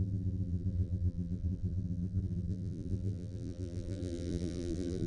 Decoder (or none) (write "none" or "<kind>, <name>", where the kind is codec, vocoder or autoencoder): vocoder, BigVGAN v2